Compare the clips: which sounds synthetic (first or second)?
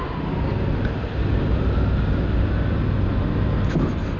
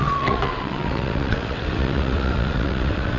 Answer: second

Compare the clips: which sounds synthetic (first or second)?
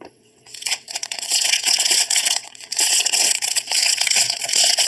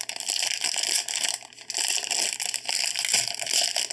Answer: first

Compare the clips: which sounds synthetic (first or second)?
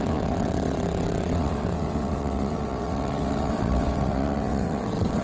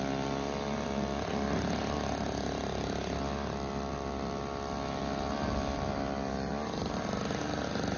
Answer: first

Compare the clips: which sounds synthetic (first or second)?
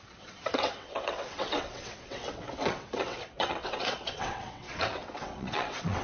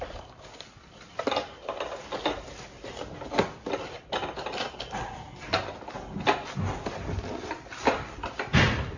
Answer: first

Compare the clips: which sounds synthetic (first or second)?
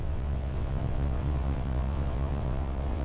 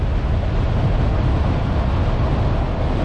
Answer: first